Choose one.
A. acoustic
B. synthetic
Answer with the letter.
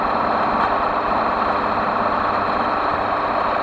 A